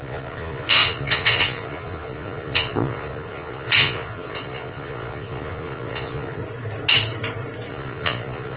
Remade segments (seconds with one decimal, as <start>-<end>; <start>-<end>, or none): 0.0-6.4; 7.7-8.6